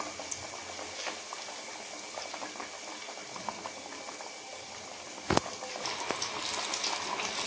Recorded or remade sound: recorded